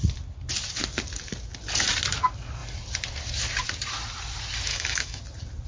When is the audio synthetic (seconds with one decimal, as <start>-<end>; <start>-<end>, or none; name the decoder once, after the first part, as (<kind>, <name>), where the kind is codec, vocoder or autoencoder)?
4.7-5.2 (autoencoder, DAC-VAE)